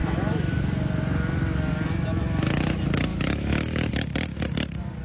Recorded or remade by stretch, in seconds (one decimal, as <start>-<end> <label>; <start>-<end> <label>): 0.0-0.6 remade; 0.6-3.1 recorded; 3.1-3.9 remade; 3.9-5.0 recorded